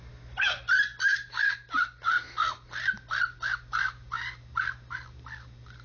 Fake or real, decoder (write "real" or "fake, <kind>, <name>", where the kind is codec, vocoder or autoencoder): real